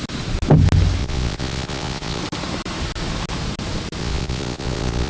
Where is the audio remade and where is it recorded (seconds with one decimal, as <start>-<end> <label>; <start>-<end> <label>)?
0.0-1.0 recorded; 1.0-2.2 remade; 2.2-4.0 recorded; 4.0-5.1 remade

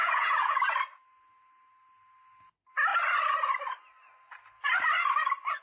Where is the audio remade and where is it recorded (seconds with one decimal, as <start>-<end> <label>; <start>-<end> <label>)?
0.0-0.6 remade; 0.6-5.6 recorded